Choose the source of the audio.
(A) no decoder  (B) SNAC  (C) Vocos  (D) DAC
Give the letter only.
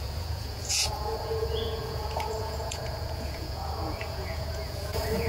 C